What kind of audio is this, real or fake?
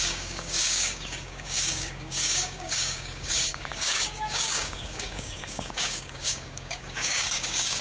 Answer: fake